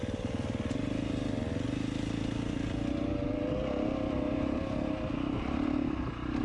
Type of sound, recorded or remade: recorded